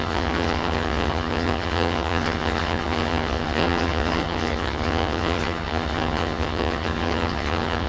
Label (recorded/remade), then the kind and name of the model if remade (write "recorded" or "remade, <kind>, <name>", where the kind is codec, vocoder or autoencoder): remade, vocoder, HiFi-GAN